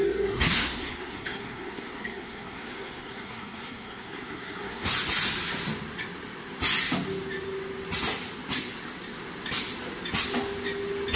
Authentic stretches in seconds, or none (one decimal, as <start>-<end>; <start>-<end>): 4.9-11.2